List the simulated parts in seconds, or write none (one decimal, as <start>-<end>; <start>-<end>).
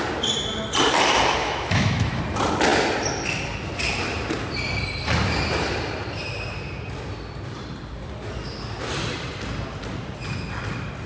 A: 1.4-2.2